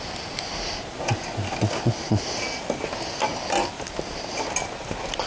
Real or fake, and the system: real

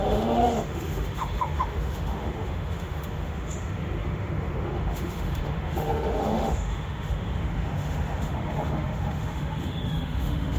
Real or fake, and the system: fake, autoencoder, DAC-VAE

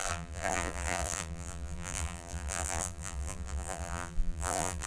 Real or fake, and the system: fake, vocoder, BigVGAN v2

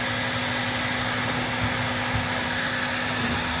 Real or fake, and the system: real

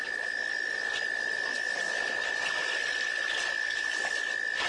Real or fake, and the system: fake, vocoder, BigVGAN v2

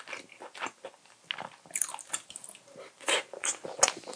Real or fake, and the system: real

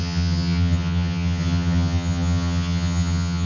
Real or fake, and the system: fake, vocoder, HiFi-GAN